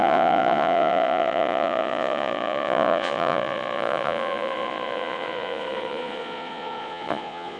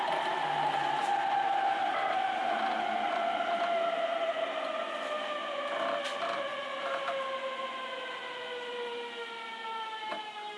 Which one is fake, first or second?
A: first